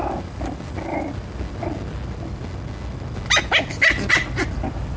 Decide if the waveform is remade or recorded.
recorded